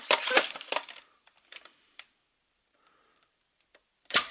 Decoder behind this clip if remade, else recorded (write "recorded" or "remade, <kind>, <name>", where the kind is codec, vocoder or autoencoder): remade, vocoder, BigVGAN v2